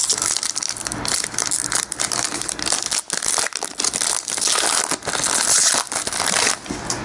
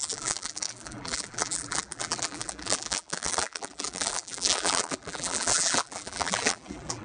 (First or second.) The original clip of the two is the first